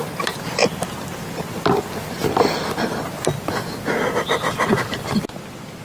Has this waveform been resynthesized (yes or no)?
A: no